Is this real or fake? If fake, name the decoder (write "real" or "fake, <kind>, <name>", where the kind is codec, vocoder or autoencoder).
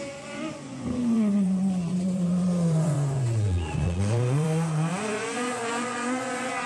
fake, vocoder, Vocos